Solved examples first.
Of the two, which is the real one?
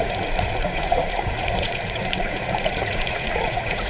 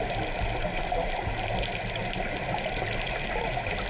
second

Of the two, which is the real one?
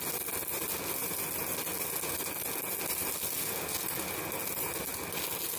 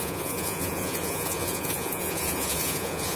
first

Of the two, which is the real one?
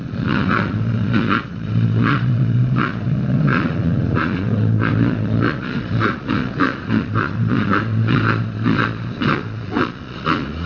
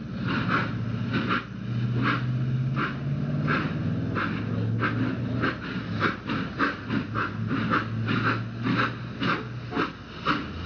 second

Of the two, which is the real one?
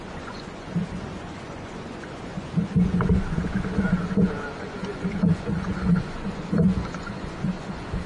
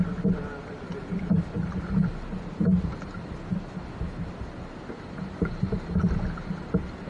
second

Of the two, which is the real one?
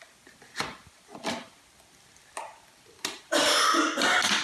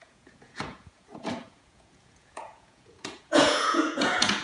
first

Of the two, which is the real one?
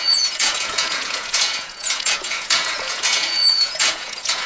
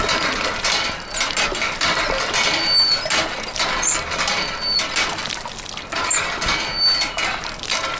second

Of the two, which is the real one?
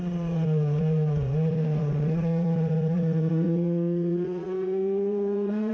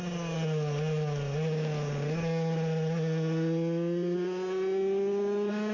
second